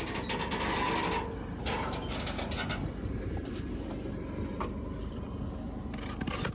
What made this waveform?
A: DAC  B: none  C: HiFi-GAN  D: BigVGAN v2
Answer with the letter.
B